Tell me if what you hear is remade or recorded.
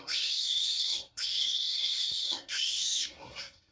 remade